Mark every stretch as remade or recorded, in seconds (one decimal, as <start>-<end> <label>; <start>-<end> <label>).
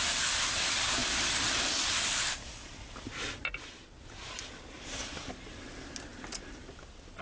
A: 0.0-7.2 recorded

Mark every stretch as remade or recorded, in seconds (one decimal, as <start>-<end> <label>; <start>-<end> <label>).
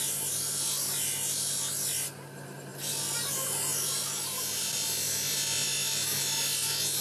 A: 0.0-7.0 recorded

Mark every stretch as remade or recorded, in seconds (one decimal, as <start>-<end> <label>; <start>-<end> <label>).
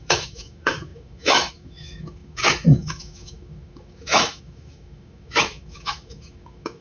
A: 0.0-6.8 remade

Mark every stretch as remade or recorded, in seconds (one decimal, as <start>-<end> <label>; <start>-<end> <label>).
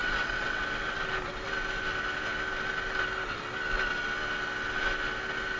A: 0.0-0.6 remade; 0.6-5.6 recorded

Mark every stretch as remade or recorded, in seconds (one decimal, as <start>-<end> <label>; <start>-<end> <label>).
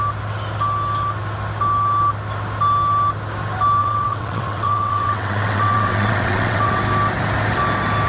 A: 0.0-3.8 recorded; 3.8-6.8 remade; 6.8-8.1 recorded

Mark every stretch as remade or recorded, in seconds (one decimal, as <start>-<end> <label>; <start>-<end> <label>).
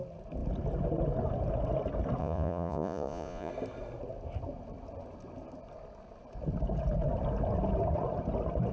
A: 0.0-2.2 recorded; 2.2-3.5 remade; 3.5-8.7 recorded